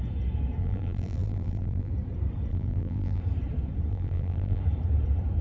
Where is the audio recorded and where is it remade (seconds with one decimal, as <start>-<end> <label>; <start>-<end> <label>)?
0.0-0.6 recorded; 0.6-1.9 remade; 1.9-2.5 recorded; 2.5-3.2 remade; 3.2-3.9 recorded; 3.9-4.6 remade; 4.6-5.4 recorded